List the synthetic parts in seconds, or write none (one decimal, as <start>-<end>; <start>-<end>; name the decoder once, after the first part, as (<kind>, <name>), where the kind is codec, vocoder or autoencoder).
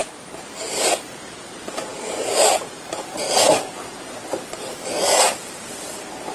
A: 0.6-6.3 (vocoder, BigVGAN v2)